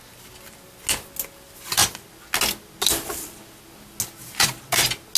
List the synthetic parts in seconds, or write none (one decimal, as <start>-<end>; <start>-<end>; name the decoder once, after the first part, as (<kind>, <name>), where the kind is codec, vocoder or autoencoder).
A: none